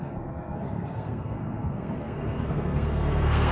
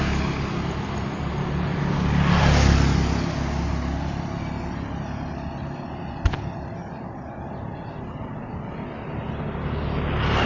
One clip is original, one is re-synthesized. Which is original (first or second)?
second